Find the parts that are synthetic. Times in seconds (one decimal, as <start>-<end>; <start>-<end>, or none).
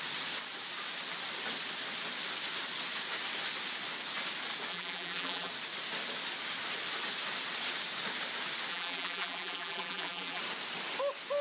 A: 4.7-5.5; 8.7-10.4